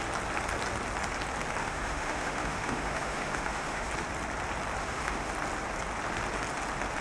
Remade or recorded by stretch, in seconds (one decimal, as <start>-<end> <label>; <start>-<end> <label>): 0.0-1.6 recorded; 1.6-3.9 remade; 3.9-4.8 recorded; 4.8-5.3 remade; 5.3-7.0 recorded